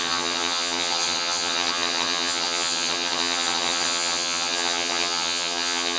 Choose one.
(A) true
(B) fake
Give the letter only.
B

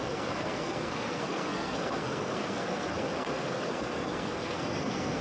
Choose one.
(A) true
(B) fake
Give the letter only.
B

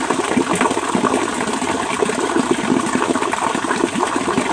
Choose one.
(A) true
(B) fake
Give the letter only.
A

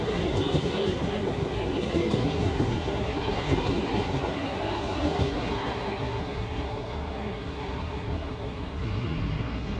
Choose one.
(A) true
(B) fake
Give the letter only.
B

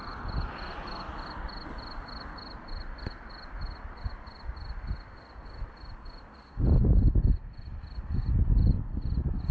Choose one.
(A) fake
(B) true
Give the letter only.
B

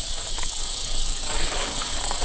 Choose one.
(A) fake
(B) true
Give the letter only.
A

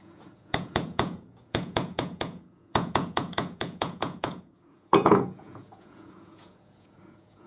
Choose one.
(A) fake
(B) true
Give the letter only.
A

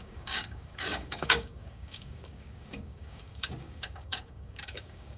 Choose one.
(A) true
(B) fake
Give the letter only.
B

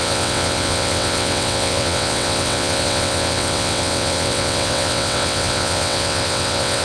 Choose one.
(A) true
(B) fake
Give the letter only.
B